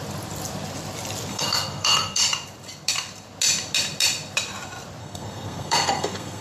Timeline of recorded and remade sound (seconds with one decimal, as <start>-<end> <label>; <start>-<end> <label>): 0.0-1.3 recorded; 1.3-2.2 remade; 2.2-5.0 recorded; 5.0-6.4 remade